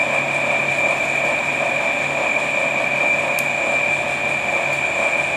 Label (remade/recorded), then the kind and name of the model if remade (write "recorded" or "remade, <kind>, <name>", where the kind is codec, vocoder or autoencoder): recorded